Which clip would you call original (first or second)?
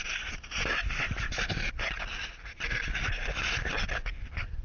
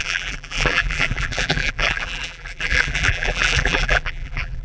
first